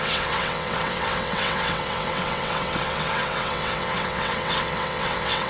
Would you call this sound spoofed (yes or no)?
yes